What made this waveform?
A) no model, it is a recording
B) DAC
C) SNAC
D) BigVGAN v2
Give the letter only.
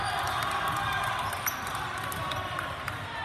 A